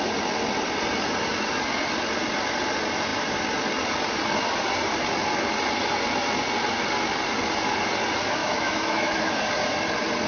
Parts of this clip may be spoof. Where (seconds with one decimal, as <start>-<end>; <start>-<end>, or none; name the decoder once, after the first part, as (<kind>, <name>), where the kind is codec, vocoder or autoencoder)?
8.4-9.4 (autoencoder, DAC-VAE)